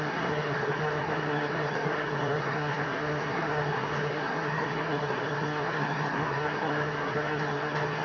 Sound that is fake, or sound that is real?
fake